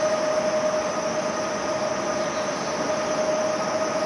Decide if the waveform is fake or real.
real